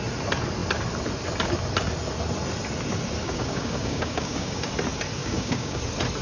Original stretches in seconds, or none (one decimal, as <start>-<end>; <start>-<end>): 0.0-3.2; 4.7-5.2; 5.8-6.2